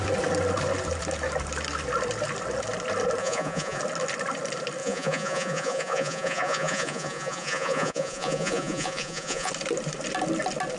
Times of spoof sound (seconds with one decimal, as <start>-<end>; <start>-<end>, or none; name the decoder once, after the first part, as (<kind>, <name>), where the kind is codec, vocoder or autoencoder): 3.2-3.8 (vocoder, Vocos); 4.8-9.5